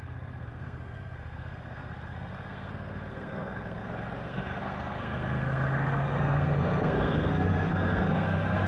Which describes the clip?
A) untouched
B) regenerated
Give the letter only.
B